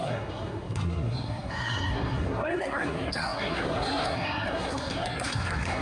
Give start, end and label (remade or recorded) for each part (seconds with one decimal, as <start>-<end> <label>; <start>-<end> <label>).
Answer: 0.0-5.8 remade

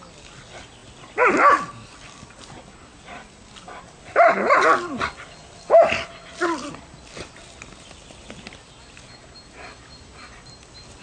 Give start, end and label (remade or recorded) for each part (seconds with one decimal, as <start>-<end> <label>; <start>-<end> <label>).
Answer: 0.0-11.0 recorded